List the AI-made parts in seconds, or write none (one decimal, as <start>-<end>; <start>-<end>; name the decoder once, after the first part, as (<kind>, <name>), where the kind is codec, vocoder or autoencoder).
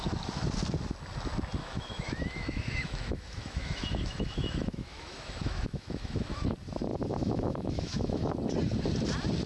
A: 1.6-6.4 (autoencoder, DAC-VAE); 6.9-8.3